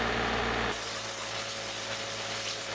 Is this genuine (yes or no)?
yes